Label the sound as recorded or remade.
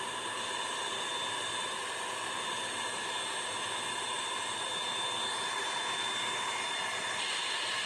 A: recorded